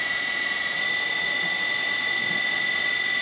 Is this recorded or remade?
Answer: recorded